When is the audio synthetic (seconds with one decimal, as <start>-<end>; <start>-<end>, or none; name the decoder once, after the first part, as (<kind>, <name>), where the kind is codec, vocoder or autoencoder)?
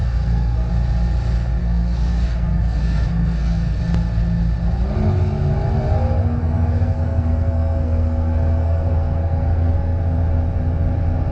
0.0-0.7 (codec, SNAC); 1.6-3.8; 6.4-10.0